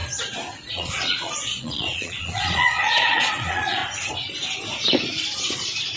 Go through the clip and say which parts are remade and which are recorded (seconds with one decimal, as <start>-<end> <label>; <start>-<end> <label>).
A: 0.0-0.7 recorded; 0.7-3.8 remade; 3.8-6.0 recorded